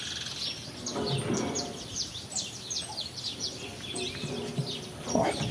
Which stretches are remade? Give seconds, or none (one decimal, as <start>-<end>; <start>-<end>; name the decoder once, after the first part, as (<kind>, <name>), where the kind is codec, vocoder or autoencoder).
none